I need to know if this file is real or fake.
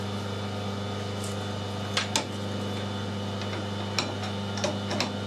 real